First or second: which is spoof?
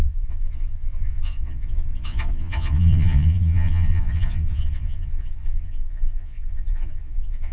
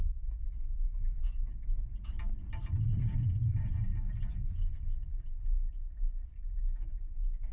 first